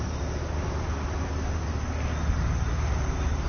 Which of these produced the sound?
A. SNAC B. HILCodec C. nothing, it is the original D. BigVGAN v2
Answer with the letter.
C